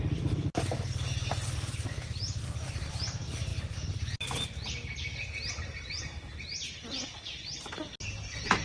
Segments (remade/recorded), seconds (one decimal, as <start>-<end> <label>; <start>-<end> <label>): 0.0-8.6 recorded